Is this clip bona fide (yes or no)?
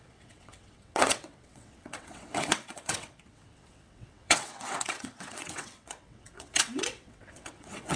no